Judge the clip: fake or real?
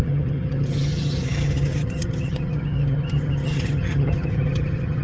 fake